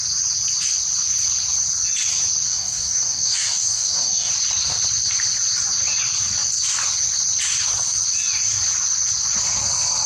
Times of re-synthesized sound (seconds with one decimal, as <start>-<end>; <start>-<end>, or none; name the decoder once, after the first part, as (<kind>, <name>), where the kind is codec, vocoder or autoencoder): 2.5-4.3 (codec, DAC)